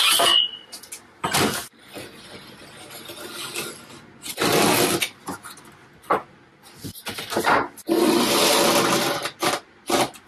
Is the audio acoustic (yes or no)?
yes